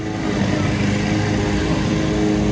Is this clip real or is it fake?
real